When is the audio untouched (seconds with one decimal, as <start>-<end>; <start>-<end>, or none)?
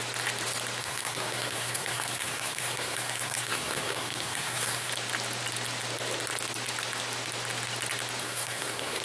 0.0-0.8; 4.9-8.2